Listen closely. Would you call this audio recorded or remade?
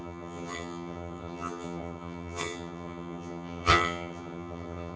remade